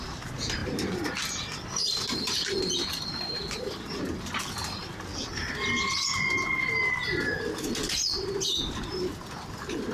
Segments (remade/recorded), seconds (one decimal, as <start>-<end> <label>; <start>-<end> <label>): 0.0-9.9 recorded